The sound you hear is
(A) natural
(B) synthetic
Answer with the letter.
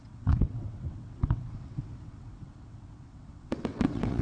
B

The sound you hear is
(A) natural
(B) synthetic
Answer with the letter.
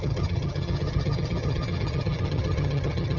B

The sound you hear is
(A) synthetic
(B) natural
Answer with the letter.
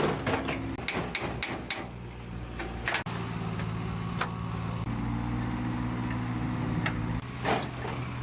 B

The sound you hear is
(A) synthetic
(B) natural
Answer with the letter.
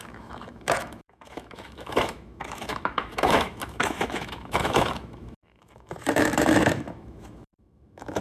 A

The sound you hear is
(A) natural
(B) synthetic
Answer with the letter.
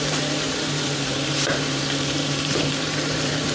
B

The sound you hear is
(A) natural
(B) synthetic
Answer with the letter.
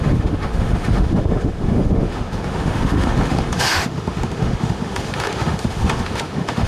B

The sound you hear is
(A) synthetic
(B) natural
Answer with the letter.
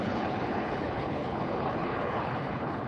A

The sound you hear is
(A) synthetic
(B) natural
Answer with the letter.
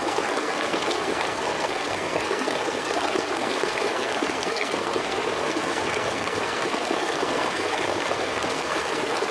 A